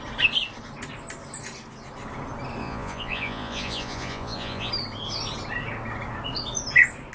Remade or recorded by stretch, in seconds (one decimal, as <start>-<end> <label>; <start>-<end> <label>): 0.0-2.6 recorded; 2.6-4.7 remade; 4.7-7.1 recorded